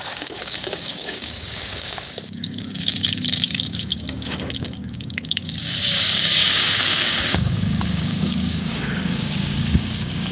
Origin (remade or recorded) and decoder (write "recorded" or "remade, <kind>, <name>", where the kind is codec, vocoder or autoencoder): remade, codec, DAC